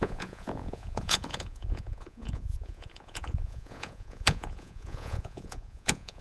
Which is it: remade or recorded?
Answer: remade